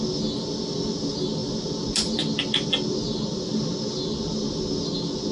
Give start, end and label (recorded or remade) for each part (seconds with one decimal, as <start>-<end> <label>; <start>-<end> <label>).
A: 0.0-5.3 recorded